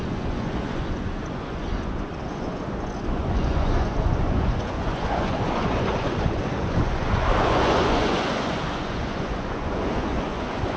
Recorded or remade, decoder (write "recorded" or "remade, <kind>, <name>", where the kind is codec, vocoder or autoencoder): remade, vocoder, Vocos